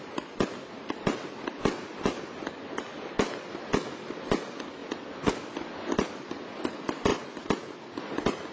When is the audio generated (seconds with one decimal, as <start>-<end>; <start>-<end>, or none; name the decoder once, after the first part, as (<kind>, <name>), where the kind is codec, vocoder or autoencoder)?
none

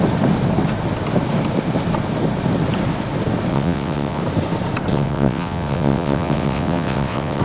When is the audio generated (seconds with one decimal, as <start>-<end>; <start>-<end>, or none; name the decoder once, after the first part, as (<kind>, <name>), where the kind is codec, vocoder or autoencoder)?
3.5-4.2 (vocoder, WaveNeXt); 4.9-7.4